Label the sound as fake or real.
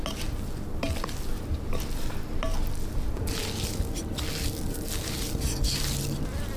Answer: real